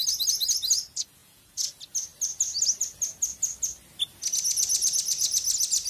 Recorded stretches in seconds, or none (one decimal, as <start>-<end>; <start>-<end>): 0.0-1.2; 1.7-5.9